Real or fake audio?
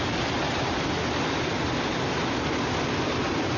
real